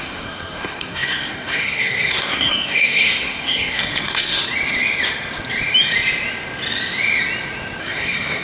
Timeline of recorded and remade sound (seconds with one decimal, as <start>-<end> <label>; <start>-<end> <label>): 0.0-4.4 remade; 4.4-7.8 recorded; 7.8-8.4 remade